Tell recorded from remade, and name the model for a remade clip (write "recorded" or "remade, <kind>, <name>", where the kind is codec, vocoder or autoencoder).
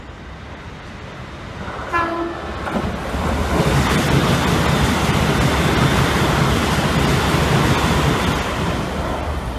recorded